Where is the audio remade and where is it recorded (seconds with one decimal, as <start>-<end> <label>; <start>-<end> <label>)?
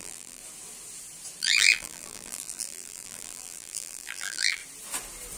0.0-0.4 remade; 0.4-1.4 recorded; 1.4-4.6 remade; 4.6-5.4 recorded